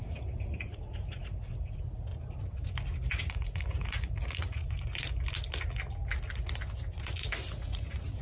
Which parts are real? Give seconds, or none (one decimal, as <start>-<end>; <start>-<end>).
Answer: 2.1-3.2; 4.9-7.5